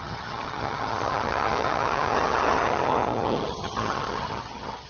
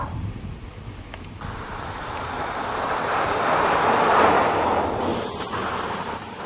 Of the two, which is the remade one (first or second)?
first